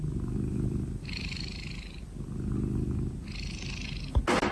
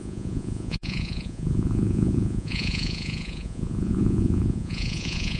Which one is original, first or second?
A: first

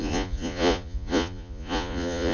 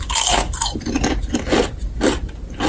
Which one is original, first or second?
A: second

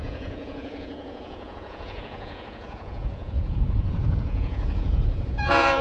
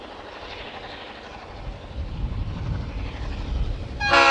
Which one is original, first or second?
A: second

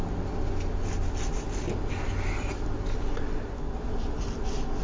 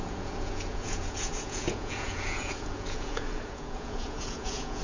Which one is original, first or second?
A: first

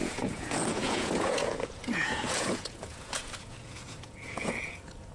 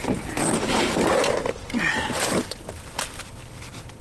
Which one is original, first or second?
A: second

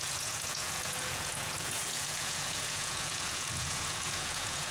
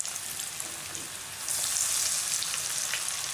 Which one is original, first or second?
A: second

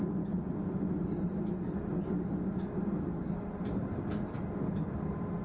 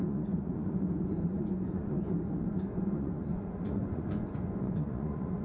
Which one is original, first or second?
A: first